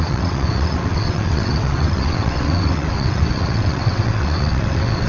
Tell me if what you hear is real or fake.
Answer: fake